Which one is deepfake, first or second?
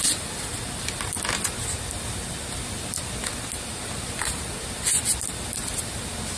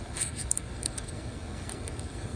second